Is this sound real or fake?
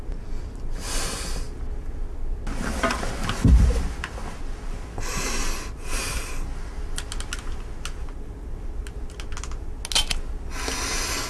real